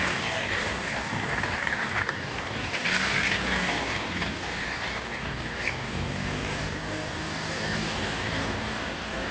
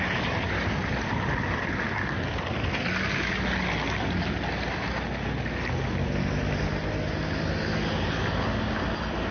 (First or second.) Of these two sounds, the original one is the second